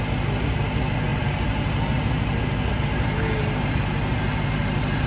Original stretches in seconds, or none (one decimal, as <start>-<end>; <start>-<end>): 0.0-1.1; 2.4-5.1